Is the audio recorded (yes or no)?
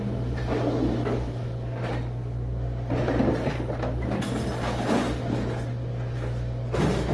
yes